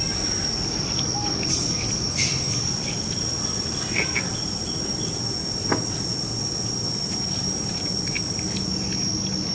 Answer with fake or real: real